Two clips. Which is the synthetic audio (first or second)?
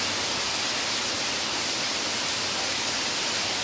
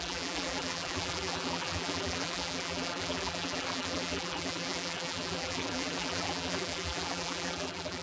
second